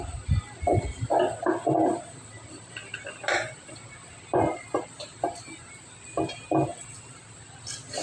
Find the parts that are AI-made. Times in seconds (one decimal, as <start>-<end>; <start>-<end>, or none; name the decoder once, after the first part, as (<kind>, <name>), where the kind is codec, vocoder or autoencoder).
none